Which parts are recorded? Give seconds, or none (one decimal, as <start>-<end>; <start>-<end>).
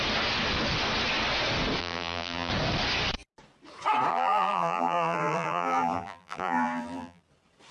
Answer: 0.0-1.8; 2.5-4.1; 7.2-7.7